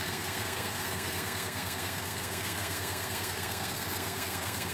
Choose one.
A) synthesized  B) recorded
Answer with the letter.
A